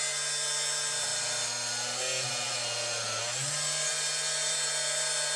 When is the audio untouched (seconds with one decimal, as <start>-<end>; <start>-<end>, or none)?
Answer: 0.0-5.4